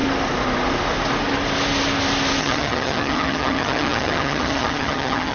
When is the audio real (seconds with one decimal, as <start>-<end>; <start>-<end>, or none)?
0.0-2.4